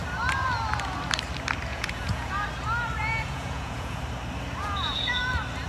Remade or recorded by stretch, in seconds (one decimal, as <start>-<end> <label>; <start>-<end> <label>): 0.0-1.7 recorded; 1.7-2.3 remade; 2.3-3.0 recorded; 3.0-4.0 remade; 4.0-4.6 recorded; 4.6-5.2 remade; 5.2-5.7 recorded